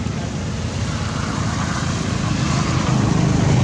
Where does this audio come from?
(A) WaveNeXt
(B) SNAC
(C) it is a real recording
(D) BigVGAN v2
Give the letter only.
C